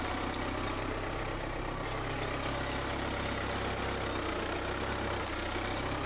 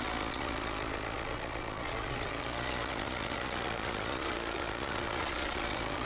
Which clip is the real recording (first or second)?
first